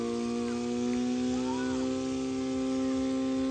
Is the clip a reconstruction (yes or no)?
no